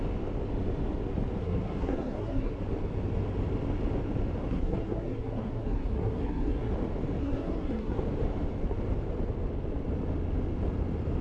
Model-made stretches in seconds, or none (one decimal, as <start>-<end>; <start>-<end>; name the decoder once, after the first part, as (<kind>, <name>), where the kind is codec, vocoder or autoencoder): 1.4-2.5 (codec, SNAC); 4.4-6.7; 7.2-8.0